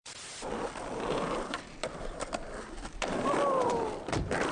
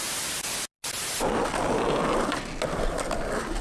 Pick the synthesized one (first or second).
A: first